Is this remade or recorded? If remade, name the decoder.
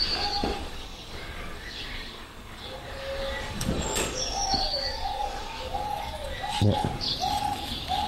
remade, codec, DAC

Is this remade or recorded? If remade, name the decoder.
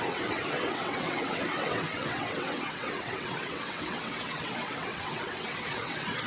remade, vocoder, WaveNeXt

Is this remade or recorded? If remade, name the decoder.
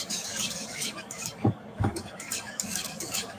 remade, codec, DAC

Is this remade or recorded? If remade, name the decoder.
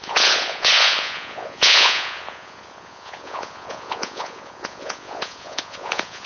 remade, vocoder, Vocos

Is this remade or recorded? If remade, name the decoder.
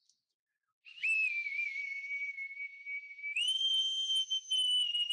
recorded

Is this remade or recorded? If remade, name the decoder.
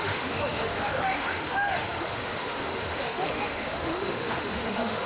remade, autoencoder, DAC-VAE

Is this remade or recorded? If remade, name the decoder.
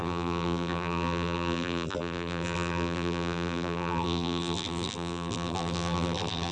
remade, vocoder, BigVGAN v2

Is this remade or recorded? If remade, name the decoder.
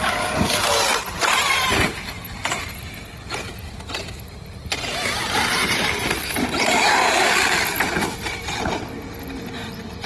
recorded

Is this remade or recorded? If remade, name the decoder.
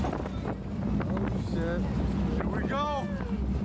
recorded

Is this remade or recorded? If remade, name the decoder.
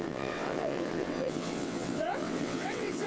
remade, vocoder, WaveNeXt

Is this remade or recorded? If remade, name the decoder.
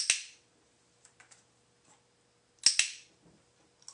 recorded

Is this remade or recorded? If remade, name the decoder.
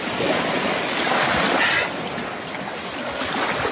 recorded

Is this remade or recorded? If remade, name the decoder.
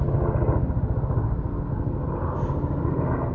recorded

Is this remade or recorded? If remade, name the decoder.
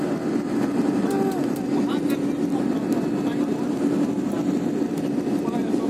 recorded